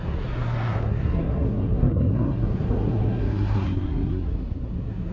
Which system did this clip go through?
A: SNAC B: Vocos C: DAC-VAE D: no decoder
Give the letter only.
A